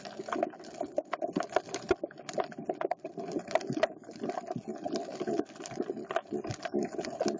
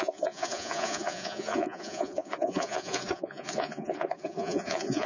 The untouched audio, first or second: first